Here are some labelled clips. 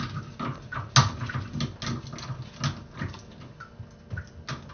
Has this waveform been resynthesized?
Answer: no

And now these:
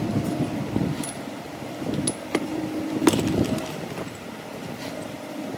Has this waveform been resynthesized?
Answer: no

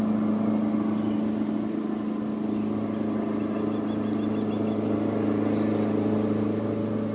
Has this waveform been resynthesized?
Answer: no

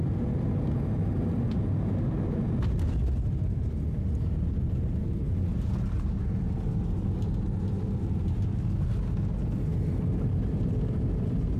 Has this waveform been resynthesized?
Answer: no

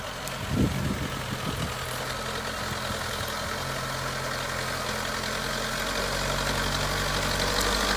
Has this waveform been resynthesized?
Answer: no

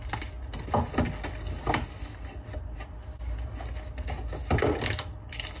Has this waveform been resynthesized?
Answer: no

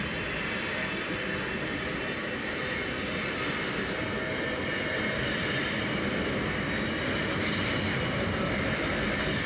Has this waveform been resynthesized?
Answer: no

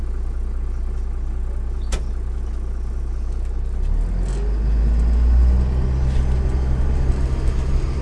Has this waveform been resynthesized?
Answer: no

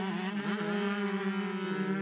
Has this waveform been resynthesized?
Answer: no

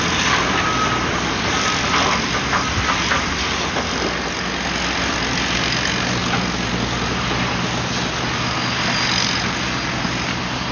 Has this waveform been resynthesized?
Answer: no